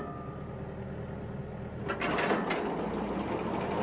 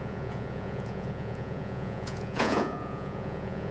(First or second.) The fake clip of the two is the second